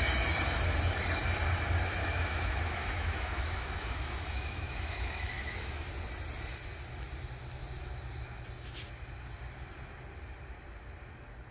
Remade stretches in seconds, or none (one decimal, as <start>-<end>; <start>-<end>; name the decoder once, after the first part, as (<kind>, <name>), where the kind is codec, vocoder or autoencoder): 2.0-5.9 (autoencoder, DAC-VAE)